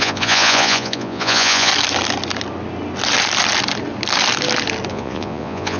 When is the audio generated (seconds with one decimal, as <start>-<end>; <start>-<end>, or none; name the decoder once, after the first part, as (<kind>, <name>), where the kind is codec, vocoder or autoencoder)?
0.0-1.7 (vocoder, Vocos); 4.9-5.8